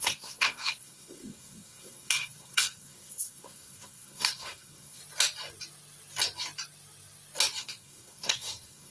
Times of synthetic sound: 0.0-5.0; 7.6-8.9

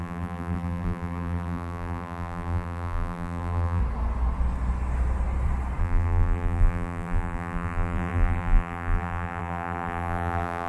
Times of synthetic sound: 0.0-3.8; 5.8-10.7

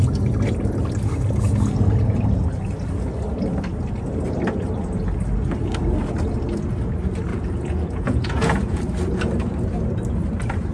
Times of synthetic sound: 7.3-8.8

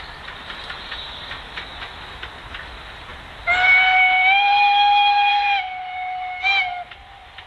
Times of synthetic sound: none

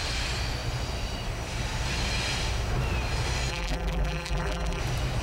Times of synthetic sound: 3.5-4.8

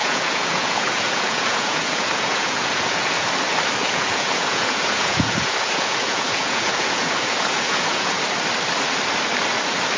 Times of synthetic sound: 0.0-3.3; 3.8-8.2

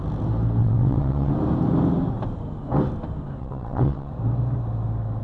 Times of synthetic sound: 0.6-1.3; 3.4-4.1